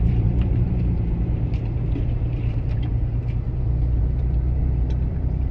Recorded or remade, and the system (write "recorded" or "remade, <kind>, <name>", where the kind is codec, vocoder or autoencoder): remade, vocoder, BigVGAN v2